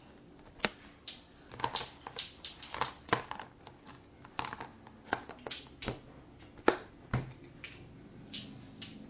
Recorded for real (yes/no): yes